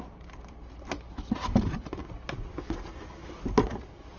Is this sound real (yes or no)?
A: yes